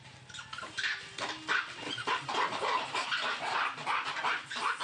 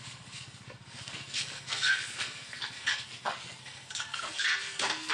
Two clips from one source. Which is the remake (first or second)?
second